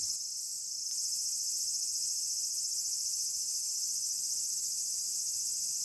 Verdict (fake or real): fake